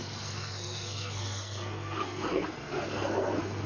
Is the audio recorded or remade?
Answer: remade